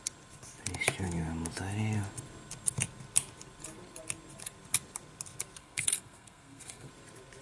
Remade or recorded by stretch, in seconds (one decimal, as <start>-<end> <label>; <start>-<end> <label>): 0.0-5.6 recorded; 5.6-6.9 remade; 6.9-7.4 recorded